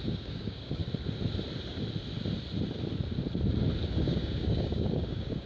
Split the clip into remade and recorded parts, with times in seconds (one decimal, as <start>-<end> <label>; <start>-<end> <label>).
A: 0.0-0.8 remade; 0.8-4.0 recorded; 4.0-5.5 remade